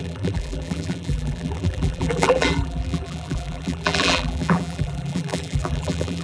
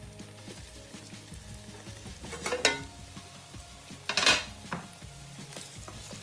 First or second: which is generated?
first